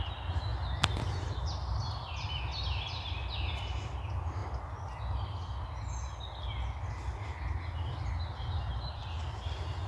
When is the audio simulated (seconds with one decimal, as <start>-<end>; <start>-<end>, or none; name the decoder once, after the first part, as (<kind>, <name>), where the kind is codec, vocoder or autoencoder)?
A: none